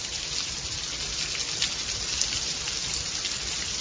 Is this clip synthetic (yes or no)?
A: no